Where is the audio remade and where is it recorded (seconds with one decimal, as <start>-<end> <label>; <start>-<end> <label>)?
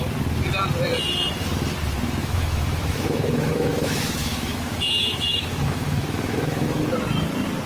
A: 0.0-2.2 recorded; 2.2-6.8 remade; 6.8-7.7 recorded